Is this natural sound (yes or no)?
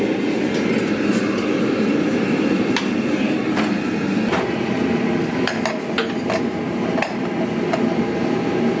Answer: yes